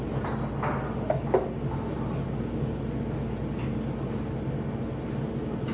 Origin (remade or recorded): recorded